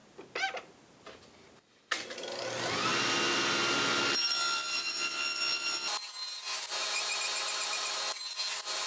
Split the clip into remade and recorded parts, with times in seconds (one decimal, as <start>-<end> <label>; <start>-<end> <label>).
0.0-8.9 recorded